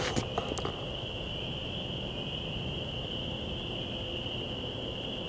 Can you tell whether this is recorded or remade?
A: recorded